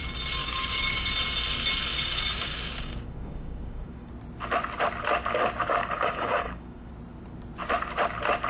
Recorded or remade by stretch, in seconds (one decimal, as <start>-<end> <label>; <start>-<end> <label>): 0.0-0.4 recorded; 0.4-1.1 remade; 1.1-1.9 recorded; 1.9-4.1 remade; 4.1-5.8 recorded; 5.8-6.9 remade; 6.9-8.5 recorded